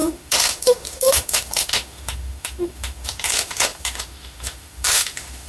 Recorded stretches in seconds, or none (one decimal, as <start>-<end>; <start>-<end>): none